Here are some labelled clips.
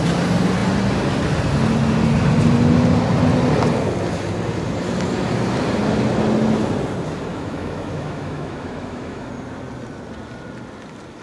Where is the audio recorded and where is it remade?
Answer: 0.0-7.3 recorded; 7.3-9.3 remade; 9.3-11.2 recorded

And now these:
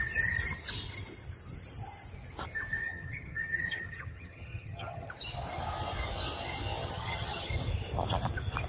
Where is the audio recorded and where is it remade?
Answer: 0.0-2.8 recorded; 2.8-5.1 remade; 5.1-6.8 recorded; 6.8-7.5 remade; 7.5-8.7 recorded

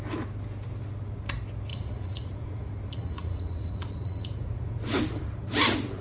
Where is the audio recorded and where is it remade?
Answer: 0.0-1.7 recorded; 1.7-5.2 remade; 5.2-6.0 recorded

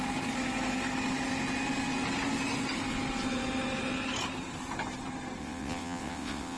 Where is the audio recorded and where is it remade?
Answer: 0.0-5.4 recorded; 5.4-6.6 remade

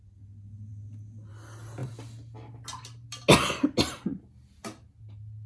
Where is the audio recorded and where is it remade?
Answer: 0.0-5.5 recorded